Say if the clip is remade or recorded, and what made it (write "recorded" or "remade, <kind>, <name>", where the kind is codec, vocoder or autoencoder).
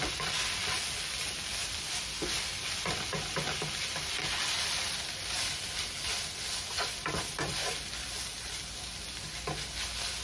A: recorded